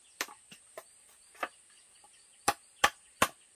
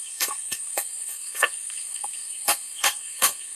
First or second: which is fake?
second